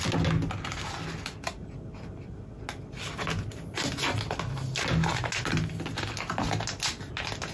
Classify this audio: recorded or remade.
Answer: recorded